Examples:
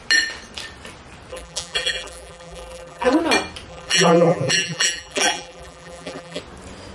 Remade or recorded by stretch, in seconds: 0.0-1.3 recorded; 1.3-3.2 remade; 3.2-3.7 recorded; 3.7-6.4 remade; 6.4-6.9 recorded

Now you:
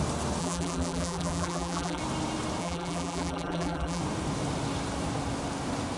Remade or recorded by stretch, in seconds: 0.0-0.4 recorded; 0.4-2.0 remade; 2.0-2.6 recorded; 2.6-4.0 remade; 4.0-6.0 recorded

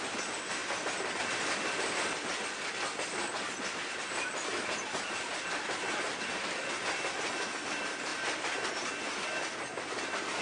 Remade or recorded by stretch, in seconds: 0.0-8.1 recorded; 8.1-8.7 remade; 8.7-10.4 recorded